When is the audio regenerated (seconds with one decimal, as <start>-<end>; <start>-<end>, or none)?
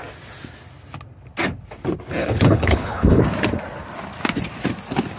2.2-3.2